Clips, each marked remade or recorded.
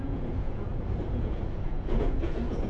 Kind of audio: remade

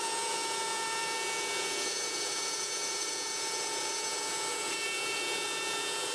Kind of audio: remade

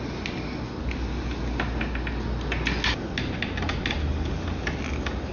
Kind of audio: recorded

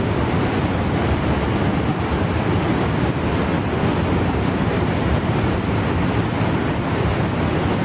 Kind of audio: recorded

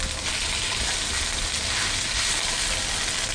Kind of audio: recorded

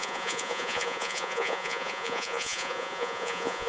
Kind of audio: remade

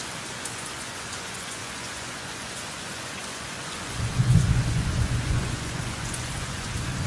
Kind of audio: remade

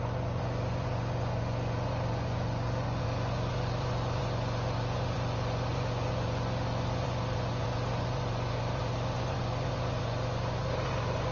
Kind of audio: remade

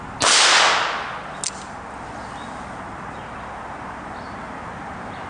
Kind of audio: recorded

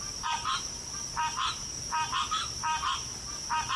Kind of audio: recorded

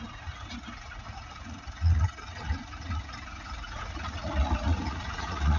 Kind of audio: remade